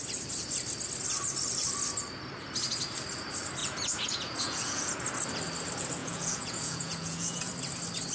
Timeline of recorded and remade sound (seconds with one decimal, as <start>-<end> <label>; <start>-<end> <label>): 0.0-3.6 recorded; 3.6-5.0 remade; 5.0-6.0 recorded; 6.0-7.5 remade; 7.5-8.1 recorded